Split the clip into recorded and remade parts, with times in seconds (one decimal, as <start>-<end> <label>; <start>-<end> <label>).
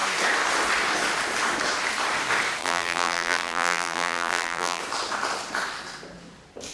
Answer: 0.0-2.6 recorded; 2.6-4.8 remade; 4.8-6.7 recorded